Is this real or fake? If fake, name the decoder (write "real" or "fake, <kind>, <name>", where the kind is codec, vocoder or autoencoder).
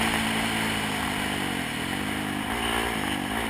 real